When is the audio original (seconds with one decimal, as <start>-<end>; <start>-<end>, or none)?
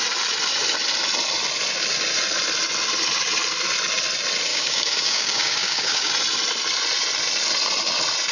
0.0-4.5; 6.1-8.3